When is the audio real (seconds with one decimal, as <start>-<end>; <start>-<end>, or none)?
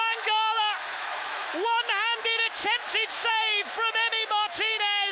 none